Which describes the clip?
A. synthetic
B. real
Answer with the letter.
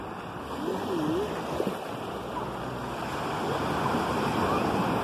B